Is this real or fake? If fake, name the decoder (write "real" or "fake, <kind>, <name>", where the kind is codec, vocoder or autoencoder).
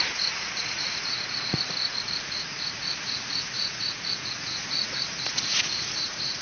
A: fake, vocoder, Vocos